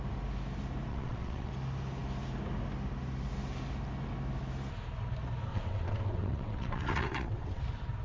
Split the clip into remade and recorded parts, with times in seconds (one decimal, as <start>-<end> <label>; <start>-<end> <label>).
0.0-0.9 recorded; 0.9-1.5 remade; 1.5-5.5 recorded; 5.5-7.6 remade; 7.6-8.0 recorded